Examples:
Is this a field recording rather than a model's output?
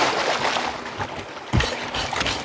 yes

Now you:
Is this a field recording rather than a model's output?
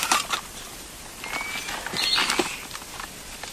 yes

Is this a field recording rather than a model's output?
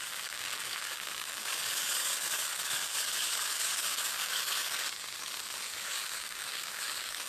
no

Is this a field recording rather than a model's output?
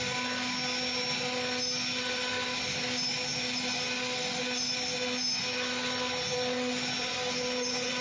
yes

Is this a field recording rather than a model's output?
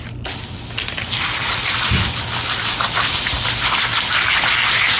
yes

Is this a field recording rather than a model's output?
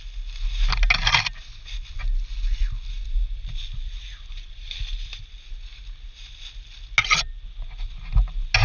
yes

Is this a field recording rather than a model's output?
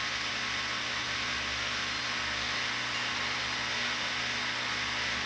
yes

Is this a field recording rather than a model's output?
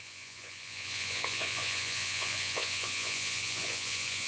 no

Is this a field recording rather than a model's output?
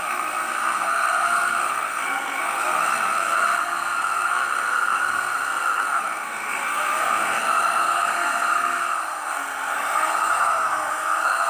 no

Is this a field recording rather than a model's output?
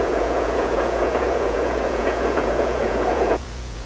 no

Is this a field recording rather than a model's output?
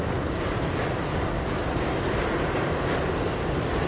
yes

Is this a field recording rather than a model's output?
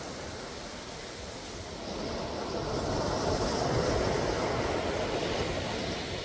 yes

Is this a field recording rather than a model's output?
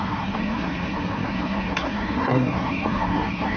no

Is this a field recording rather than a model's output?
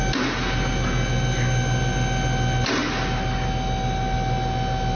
yes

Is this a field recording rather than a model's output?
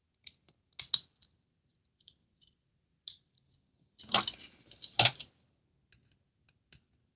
yes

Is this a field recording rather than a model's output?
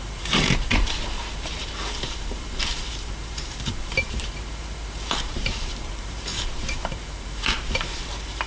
no